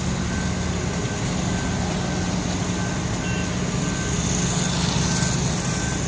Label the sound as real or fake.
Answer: real